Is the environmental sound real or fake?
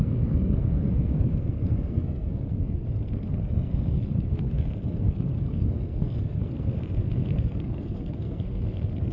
fake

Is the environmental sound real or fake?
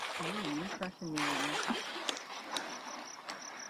real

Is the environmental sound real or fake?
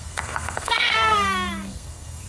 fake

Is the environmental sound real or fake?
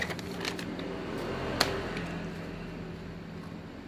real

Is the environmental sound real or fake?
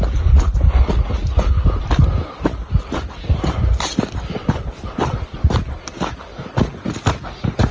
real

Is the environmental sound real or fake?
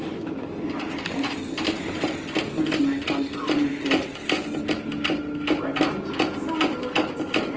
real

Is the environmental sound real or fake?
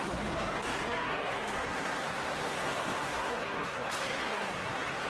fake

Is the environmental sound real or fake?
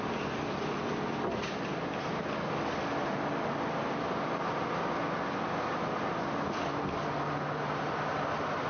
real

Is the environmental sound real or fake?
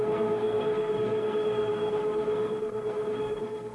fake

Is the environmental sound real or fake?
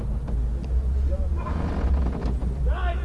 real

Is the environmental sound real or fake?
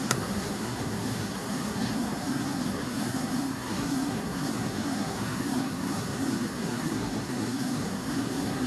fake